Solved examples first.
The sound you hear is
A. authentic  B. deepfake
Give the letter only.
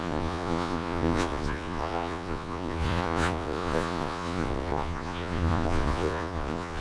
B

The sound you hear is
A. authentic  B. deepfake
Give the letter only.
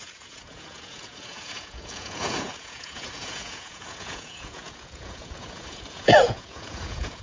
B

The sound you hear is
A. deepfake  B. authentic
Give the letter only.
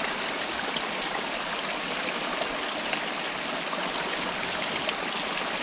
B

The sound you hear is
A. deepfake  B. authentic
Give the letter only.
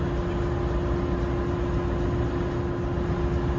B